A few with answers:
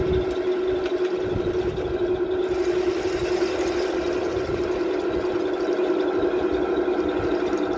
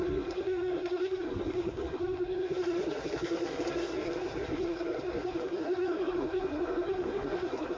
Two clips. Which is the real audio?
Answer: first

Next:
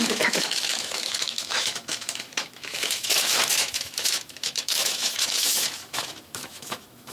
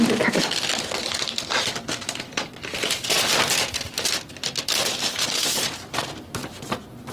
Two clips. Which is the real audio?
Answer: second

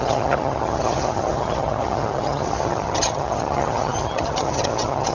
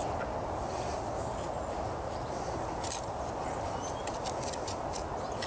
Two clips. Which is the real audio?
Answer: second